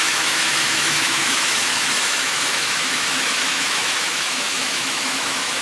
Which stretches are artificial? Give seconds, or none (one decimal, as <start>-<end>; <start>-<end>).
0.0-5.6